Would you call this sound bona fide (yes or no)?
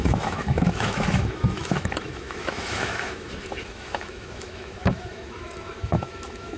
no